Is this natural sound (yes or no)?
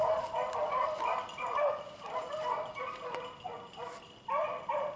yes